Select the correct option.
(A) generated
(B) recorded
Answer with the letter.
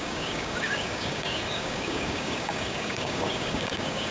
A